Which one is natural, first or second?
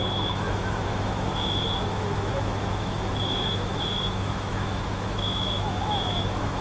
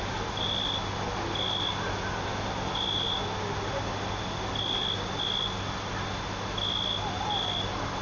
second